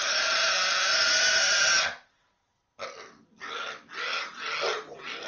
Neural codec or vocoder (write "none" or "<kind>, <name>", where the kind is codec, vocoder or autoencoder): none